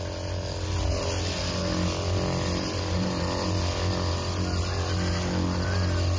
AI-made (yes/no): no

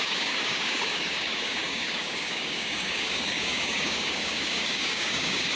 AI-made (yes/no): yes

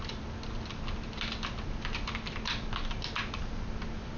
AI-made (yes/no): no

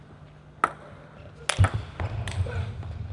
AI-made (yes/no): no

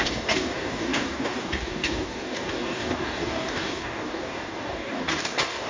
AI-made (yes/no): yes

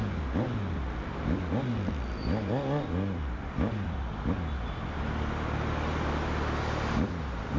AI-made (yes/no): no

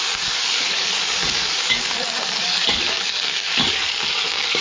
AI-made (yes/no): yes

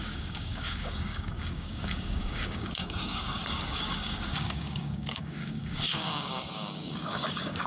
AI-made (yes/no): yes